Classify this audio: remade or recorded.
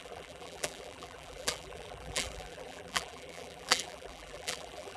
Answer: remade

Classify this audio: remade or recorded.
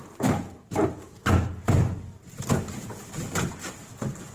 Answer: remade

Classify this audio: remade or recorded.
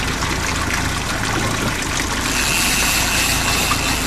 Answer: recorded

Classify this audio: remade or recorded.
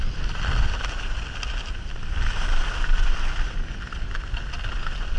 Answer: recorded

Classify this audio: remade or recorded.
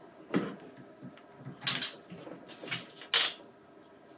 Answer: recorded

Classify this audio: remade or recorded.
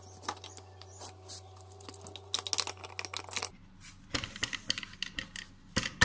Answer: recorded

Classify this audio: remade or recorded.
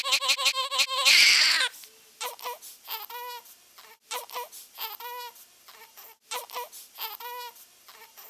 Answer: recorded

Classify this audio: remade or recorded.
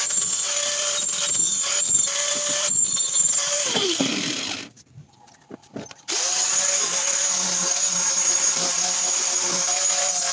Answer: remade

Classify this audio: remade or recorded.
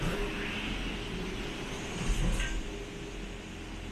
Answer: recorded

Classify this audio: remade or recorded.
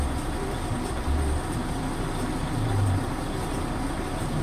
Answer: remade